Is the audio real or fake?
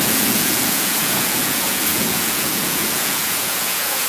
fake